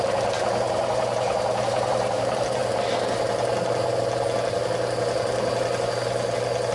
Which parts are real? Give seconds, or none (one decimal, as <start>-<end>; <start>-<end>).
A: 2.6-6.7